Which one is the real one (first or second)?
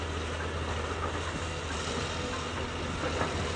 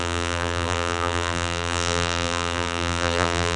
first